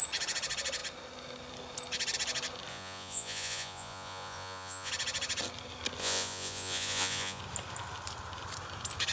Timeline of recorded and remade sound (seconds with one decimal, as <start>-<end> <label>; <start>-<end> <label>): 0.0-2.7 recorded; 2.7-4.9 remade; 4.9-6.0 recorded; 6.0-7.4 remade; 7.4-9.1 recorded

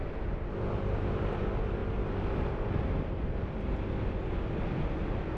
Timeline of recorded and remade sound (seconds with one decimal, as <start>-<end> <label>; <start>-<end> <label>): 0.0-1.8 remade; 1.8-5.0 recorded; 5.0-5.4 remade